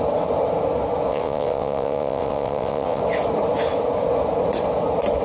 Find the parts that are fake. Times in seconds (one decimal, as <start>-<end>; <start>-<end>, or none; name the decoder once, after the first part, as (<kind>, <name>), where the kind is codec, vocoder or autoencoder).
1.1-3.0 (vocoder, WaveNeXt)